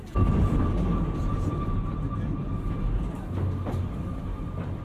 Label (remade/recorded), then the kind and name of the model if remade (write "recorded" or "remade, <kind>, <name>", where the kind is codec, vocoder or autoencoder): recorded